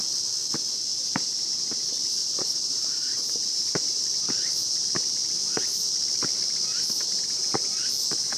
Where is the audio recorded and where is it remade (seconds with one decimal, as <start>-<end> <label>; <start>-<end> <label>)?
0.0-2.2 recorded; 2.2-4.0 remade; 4.0-8.4 recorded